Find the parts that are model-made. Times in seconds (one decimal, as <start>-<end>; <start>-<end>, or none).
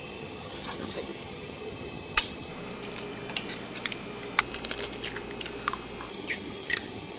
0.0-2.5; 6.1-7.2